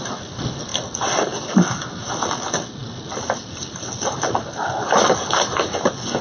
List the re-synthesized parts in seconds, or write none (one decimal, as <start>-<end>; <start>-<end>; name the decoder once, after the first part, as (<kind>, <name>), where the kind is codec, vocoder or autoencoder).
none